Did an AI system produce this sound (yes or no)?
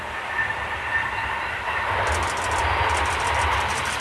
no